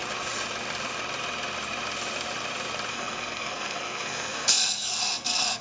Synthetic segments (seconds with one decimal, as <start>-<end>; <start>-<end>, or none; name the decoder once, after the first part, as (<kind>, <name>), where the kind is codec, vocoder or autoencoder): 2.9-5.6 (codec, SNAC)